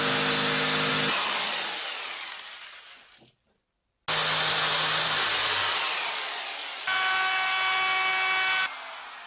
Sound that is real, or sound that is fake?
real